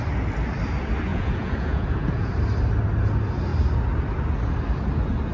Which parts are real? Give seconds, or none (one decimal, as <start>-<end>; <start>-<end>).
0.0-1.1; 2.3-5.3